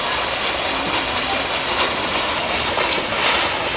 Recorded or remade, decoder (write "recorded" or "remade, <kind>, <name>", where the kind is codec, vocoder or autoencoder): recorded